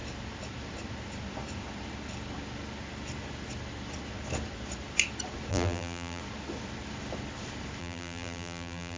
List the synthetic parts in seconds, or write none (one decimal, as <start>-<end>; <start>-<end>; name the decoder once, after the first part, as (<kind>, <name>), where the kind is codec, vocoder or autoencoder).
5.5-6.2 (vocoder, BigVGAN v2); 7.8-9.0